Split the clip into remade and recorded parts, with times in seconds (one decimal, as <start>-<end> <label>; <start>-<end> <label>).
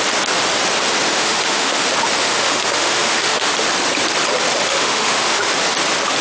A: 0.0-1.1 recorded; 1.1-1.8 remade; 1.8-2.2 recorded; 2.2-3.5 remade; 3.5-4.7 recorded; 4.7-5.5 remade; 5.5-6.2 recorded